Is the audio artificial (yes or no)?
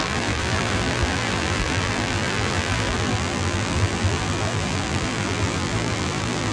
yes